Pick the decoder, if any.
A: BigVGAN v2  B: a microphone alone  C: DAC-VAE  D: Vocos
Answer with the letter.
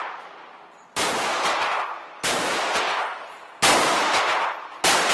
B